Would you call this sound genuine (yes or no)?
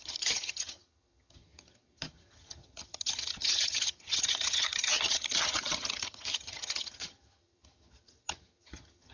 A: no